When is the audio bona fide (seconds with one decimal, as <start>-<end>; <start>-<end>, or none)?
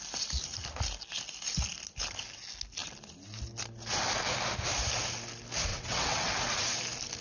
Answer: 0.0-5.7; 6.3-7.2